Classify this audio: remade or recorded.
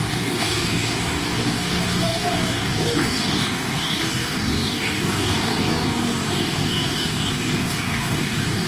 remade